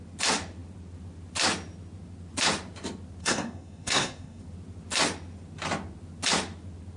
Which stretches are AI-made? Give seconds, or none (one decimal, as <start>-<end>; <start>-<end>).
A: 3.2-4.4